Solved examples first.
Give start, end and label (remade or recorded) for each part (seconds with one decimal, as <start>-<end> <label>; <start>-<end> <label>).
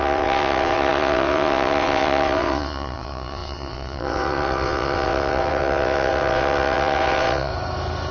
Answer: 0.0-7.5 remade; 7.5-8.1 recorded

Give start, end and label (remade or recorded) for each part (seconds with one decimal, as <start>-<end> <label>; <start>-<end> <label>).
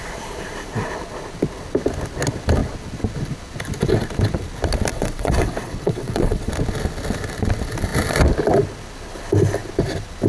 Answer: 0.0-4.9 recorded; 4.9-6.5 remade; 6.5-10.3 recorded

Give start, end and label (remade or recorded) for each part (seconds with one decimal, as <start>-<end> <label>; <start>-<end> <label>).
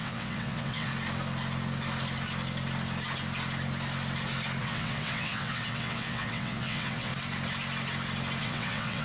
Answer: 0.0-0.9 remade; 0.9-4.6 recorded; 4.6-7.1 remade; 7.1-8.4 recorded; 8.4-9.0 remade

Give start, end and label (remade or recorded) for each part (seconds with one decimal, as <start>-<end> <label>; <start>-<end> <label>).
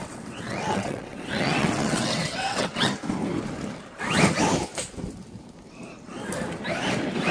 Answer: 0.0-2.9 remade; 2.9-7.3 recorded